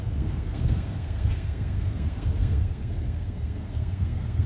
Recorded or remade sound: remade